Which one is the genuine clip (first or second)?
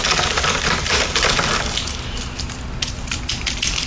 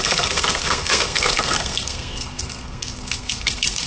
first